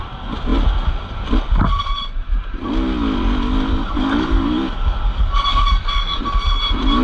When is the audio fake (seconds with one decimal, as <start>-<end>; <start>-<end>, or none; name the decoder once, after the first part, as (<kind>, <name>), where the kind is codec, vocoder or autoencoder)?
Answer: 3.7-6.2 (codec, DAC)